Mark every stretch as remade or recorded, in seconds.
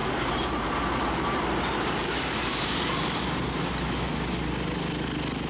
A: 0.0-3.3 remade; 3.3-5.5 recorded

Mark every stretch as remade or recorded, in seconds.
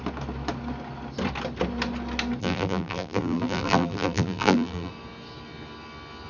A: 0.0-2.4 recorded; 2.4-4.9 remade; 4.9-6.3 recorded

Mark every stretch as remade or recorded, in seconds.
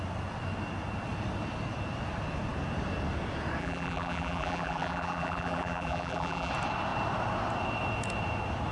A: 0.0-3.6 recorded; 3.6-6.5 remade; 6.5-8.7 recorded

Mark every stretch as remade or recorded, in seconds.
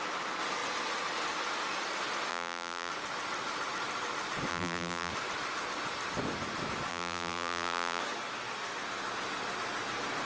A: 0.0-2.3 recorded; 2.3-2.9 remade; 2.9-4.5 recorded; 4.5-5.1 remade; 5.1-6.9 recorded; 6.9-8.0 remade; 8.0-10.3 recorded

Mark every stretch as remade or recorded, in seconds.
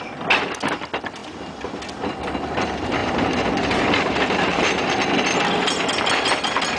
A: 0.0-3.0 recorded; 3.0-4.9 remade; 4.9-6.8 recorded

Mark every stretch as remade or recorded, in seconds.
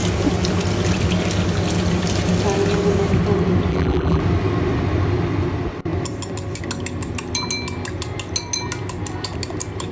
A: 0.0-3.7 recorded; 3.7-4.2 remade; 4.2-9.9 recorded